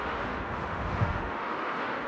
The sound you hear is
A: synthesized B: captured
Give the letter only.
A